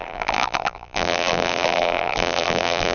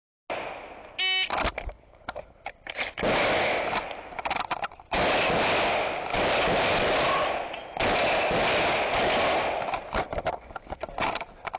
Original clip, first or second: second